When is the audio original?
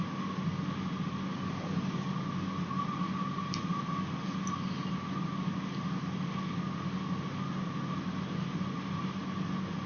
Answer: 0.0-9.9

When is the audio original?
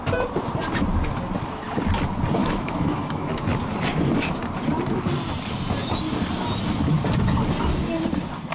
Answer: 0.0-2.4; 3.3-8.5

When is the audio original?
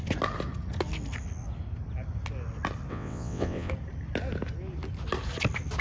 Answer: 0.0-2.9; 3.7-5.8